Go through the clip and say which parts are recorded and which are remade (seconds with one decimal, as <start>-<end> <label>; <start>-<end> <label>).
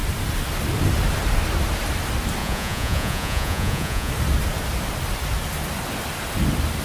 0.0-2.4 recorded; 2.4-4.1 remade; 4.1-6.8 recorded